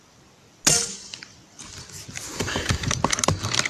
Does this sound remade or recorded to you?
recorded